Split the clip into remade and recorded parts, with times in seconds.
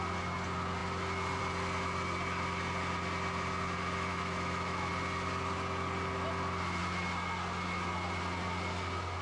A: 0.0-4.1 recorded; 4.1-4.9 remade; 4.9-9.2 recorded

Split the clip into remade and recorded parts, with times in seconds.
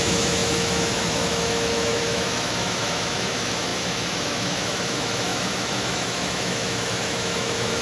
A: 0.0-7.8 remade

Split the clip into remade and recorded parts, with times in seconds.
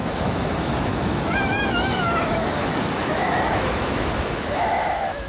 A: 0.0-5.3 remade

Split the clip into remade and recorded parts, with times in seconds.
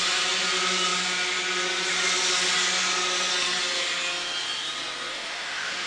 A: 0.0-5.1 recorded; 5.1-5.9 remade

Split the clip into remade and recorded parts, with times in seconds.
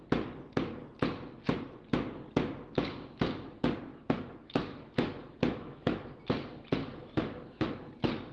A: 0.0-3.9 recorded; 3.9-6.1 remade; 6.1-6.9 recorded; 6.9-7.9 remade; 7.9-8.3 recorded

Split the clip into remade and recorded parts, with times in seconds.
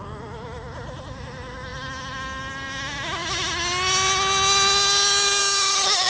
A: 0.0-6.1 recorded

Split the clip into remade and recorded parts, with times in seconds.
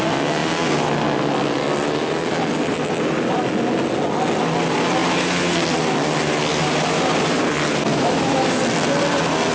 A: 0.0-7.9 recorded; 7.9-8.6 remade; 8.6-9.5 recorded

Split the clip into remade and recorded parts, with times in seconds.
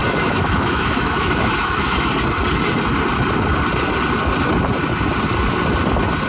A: 0.0-2.1 remade; 2.1-6.3 recorded